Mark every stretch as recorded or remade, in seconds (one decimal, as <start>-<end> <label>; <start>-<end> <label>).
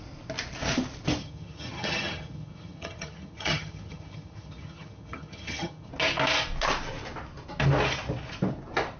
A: 0.0-1.2 recorded; 1.2-5.9 remade; 5.9-9.0 recorded